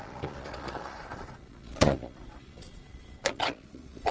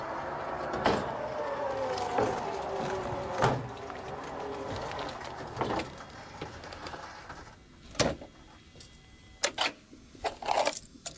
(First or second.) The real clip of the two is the second